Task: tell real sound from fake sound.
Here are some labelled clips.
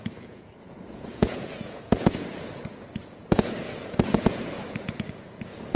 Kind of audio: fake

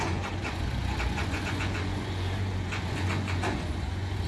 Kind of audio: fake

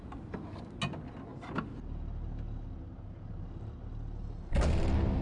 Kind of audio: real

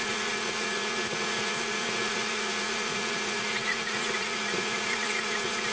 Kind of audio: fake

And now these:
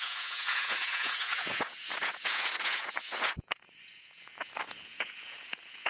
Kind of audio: fake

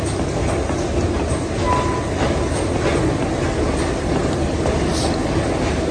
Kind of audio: real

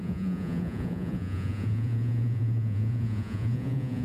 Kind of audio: fake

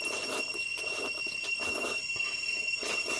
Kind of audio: real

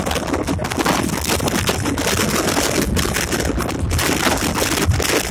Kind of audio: real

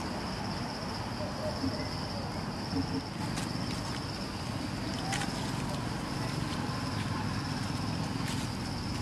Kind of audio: real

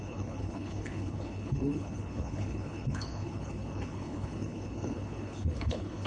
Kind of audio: fake